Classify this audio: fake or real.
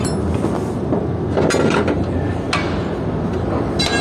real